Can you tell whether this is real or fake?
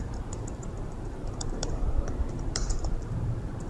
fake